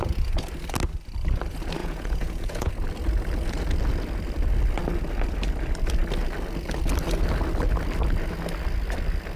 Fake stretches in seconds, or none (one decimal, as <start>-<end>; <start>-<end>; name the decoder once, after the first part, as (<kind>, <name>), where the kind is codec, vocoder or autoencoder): 1.8-2.7 (vocoder, Vocos)